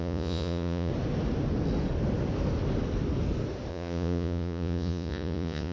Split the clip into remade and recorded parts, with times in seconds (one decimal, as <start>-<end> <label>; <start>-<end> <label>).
0.0-0.9 remade; 0.9-3.7 recorded; 3.7-5.7 remade